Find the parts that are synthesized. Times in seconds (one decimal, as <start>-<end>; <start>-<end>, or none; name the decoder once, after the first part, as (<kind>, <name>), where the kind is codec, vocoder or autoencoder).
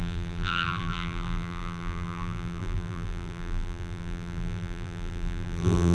0.0-5.9 (vocoder, BigVGAN v2)